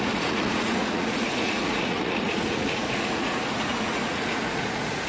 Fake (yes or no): yes